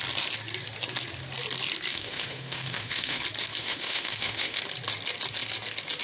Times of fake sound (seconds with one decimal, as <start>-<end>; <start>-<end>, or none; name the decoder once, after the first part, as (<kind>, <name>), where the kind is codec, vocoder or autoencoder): 1.9-3.2 (autoencoder, DAC-VAE); 3.6-4.6